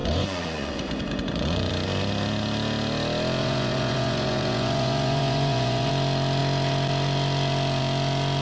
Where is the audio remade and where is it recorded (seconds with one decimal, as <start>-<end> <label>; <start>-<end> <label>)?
0.0-1.7 remade; 1.7-3.4 recorded; 3.4-5.9 remade; 5.9-8.4 recorded